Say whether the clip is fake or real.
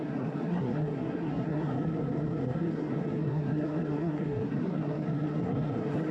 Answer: fake